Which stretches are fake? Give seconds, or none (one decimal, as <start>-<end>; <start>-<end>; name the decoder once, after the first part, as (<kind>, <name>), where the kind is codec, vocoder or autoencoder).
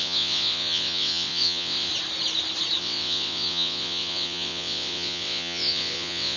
0.0-1.9 (vocoder, WaveNeXt); 2.8-6.4